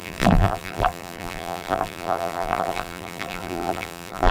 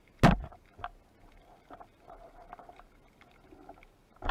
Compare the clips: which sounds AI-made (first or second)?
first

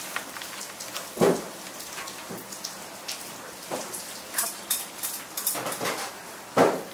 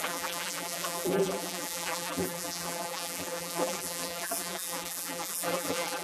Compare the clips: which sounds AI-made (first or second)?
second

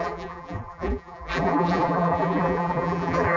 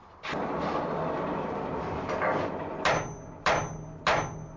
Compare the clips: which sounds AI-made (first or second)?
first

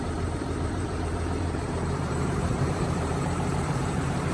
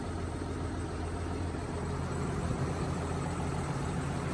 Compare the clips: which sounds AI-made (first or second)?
first